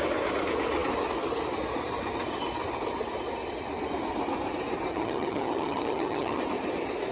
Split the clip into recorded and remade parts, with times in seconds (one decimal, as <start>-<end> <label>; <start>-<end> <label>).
0.0-4.9 recorded; 4.9-6.4 remade; 6.4-7.1 recorded